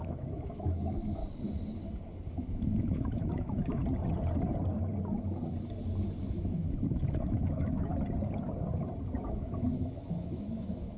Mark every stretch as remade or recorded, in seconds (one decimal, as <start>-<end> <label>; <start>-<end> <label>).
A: 0.0-1.2 remade; 1.2-2.3 recorded; 2.3-3.8 remade; 3.8-6.2 recorded; 6.2-7.9 remade; 7.9-9.2 recorded; 9.2-11.0 remade